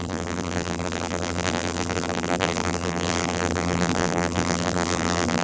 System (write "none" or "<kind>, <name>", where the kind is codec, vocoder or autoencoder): vocoder, BigVGAN v2